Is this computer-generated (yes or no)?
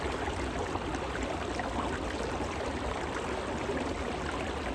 no